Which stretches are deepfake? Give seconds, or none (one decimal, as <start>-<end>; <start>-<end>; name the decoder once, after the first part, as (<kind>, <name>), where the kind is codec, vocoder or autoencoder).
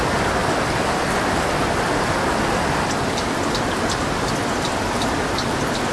0.4-2.9 (vocoder, BigVGAN v2)